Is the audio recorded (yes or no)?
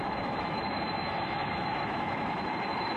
no